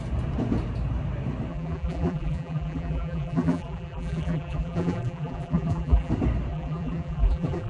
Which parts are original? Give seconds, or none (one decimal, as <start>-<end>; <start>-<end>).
0.0-1.5; 6.1-6.5